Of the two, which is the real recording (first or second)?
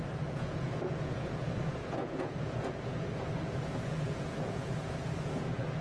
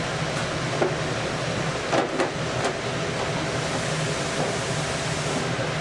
second